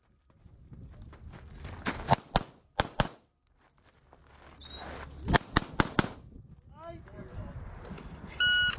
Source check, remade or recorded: recorded